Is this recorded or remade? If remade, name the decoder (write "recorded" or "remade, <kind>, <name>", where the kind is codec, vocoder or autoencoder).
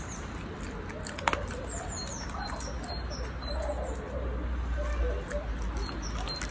recorded